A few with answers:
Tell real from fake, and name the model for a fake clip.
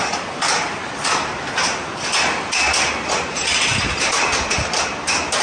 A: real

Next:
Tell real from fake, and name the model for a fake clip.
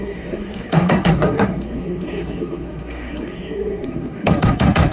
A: fake, codec, SNAC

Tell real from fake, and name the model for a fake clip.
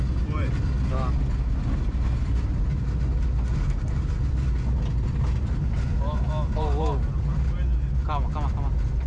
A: real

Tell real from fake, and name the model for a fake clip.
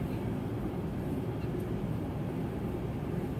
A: real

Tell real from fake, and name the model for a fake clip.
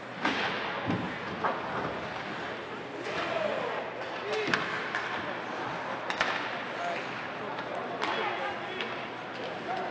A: real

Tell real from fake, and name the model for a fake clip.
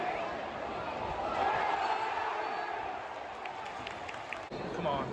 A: real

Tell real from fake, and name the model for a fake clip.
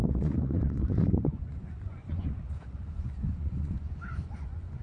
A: fake, vocoder, Vocos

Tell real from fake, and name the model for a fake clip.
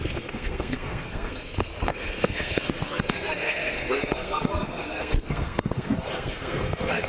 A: fake, codec, SNAC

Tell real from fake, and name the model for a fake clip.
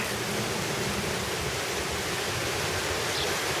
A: real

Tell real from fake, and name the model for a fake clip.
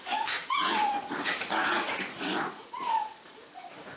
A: fake, vocoder, Vocos